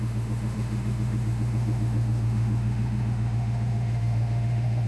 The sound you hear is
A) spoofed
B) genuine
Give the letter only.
A